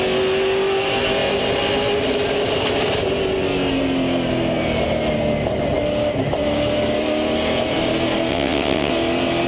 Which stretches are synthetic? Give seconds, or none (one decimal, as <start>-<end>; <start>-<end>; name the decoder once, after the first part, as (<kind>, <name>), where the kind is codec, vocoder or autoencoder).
8.3-8.9 (vocoder, WaveNeXt)